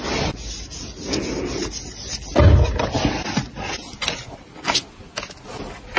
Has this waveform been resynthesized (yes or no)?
no